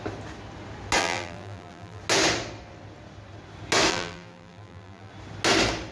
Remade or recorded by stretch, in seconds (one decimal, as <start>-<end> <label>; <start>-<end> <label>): 0.0-1.0 recorded; 1.0-2.0 remade; 2.0-3.9 recorded; 3.9-5.1 remade; 5.1-5.9 recorded